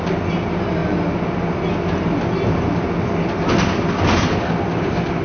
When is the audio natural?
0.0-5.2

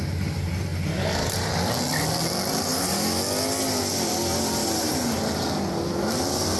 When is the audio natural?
0.0-4.6; 5.2-6.6

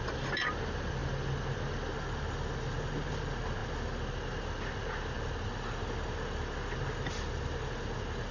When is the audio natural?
0.0-8.3

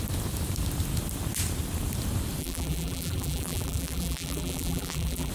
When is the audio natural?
0.0-2.4

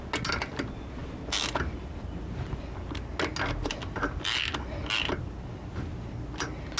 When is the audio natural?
0.0-6.8

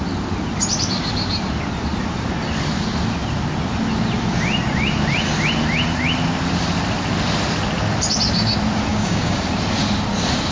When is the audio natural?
0.0-8.9; 9.4-10.5